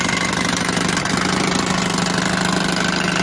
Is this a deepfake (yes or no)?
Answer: no